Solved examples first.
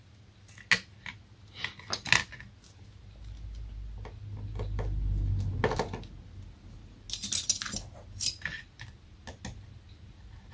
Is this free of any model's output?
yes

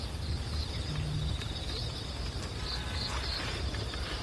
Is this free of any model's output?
yes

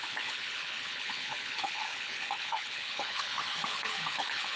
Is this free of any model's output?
no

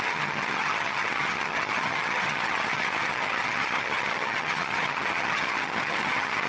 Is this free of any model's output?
no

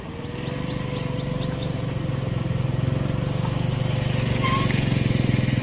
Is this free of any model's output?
yes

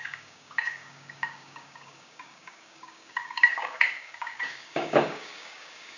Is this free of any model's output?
no